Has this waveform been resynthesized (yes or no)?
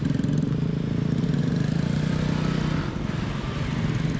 no